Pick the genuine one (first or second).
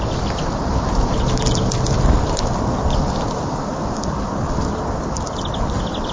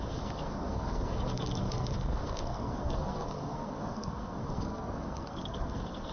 first